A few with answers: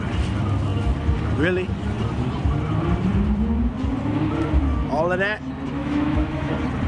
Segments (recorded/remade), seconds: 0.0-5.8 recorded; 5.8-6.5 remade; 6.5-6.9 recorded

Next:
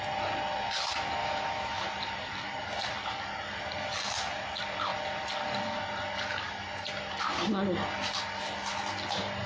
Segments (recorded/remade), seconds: 0.0-1.2 recorded; 1.2-1.8 remade; 1.8-9.5 recorded

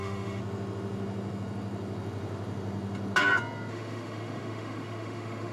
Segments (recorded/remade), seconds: 0.0-0.4 remade; 0.4-3.7 recorded; 3.7-5.5 remade

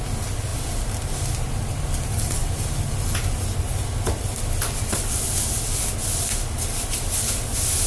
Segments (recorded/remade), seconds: 0.0-7.9 recorded

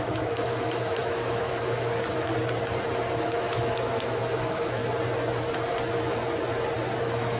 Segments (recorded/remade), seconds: 0.0-2.3 remade; 2.3-3.1 recorded; 3.1-4.8 remade; 4.8-7.0 recorded; 7.0-7.4 remade

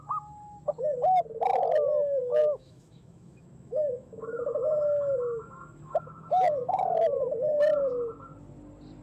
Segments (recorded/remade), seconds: 0.0-2.4 recorded; 2.4-6.8 remade; 6.8-9.0 recorded

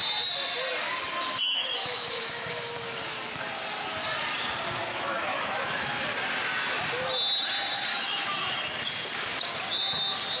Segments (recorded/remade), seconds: 0.0-1.4 recorded; 1.4-2.5 remade; 2.5-4.8 recorded; 4.8-6.0 remade; 6.0-7.9 recorded; 7.9-8.8 remade; 8.8-10.4 recorded

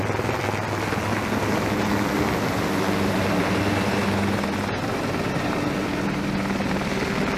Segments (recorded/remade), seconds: 0.0-7.4 recorded